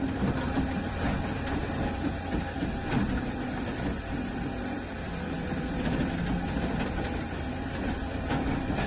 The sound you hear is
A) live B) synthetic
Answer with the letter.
B